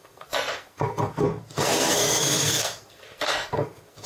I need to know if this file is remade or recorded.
remade